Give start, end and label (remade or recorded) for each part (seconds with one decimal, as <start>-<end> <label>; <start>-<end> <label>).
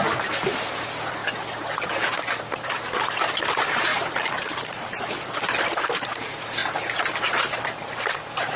0.0-3.9 recorded; 3.9-5.0 remade; 5.0-8.6 recorded